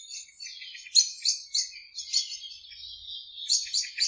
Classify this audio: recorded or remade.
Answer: recorded